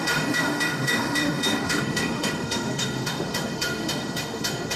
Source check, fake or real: fake